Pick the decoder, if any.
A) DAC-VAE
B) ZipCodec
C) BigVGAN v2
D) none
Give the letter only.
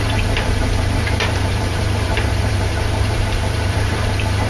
C